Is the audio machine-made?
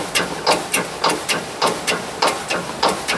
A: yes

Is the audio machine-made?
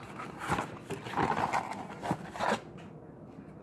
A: no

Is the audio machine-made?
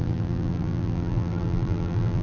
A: yes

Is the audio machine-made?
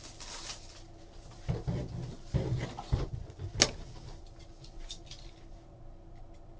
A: no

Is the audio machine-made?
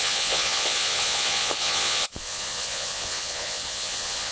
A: yes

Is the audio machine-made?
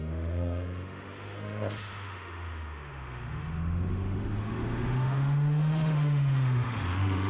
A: yes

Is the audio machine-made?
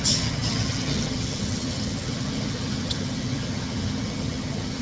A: yes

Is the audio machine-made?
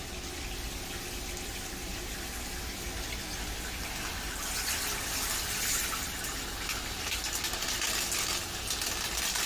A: no